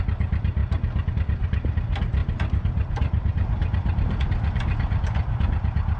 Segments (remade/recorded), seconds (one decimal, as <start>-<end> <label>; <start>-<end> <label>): 0.0-2.2 recorded; 2.2-4.2 remade; 4.2-6.0 recorded